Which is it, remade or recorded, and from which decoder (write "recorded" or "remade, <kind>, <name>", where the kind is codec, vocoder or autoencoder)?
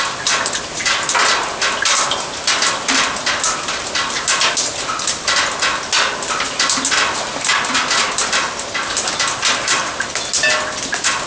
recorded